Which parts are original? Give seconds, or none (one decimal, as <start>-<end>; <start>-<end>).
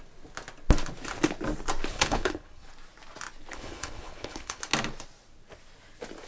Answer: 0.0-1.9; 2.7-3.5; 4.6-6.3